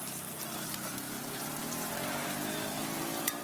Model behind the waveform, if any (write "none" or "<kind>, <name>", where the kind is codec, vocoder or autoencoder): none